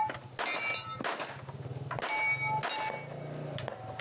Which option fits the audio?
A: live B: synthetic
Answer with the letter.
A